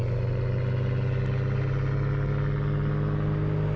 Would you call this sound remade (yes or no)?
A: no